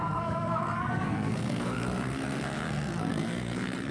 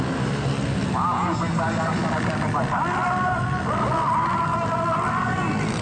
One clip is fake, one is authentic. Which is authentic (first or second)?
second